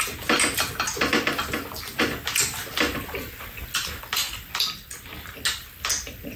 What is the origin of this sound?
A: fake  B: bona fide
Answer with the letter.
B